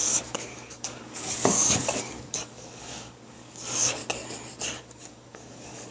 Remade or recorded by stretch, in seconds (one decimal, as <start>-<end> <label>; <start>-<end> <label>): 0.0-4.0 remade; 4.0-4.8 recorded; 4.8-5.9 remade